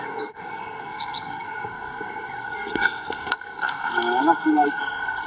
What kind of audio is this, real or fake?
fake